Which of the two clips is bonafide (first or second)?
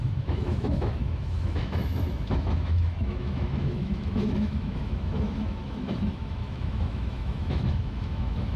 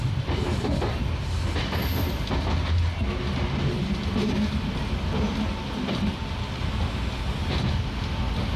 second